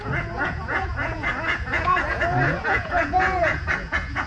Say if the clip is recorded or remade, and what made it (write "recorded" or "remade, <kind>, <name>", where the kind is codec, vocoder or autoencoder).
remade, vocoder, Vocos